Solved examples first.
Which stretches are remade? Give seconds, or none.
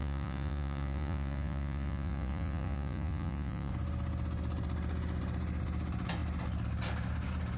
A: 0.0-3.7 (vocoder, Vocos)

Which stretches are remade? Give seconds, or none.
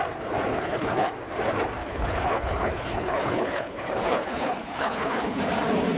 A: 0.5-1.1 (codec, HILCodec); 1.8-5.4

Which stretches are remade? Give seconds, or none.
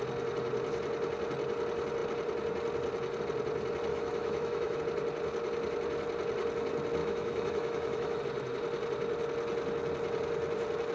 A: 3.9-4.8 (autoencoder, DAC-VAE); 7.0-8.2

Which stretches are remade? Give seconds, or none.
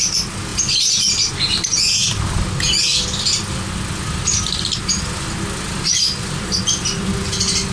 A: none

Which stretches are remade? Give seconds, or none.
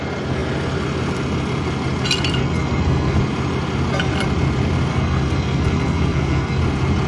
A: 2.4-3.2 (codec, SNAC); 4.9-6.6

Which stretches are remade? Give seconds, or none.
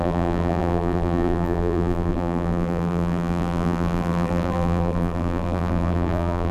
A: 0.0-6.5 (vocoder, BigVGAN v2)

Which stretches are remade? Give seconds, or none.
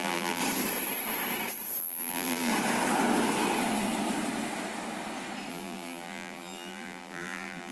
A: 0.0-0.4 (vocoder, BigVGAN v2); 1.8-2.5; 5.5-7.7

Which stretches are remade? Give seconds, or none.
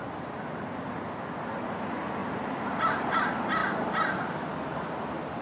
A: 2.2-3.1 (vocoder, BigVGAN v2); 3.6-4.4